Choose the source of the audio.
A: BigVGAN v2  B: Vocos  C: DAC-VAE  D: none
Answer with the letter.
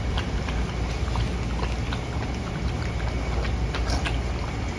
D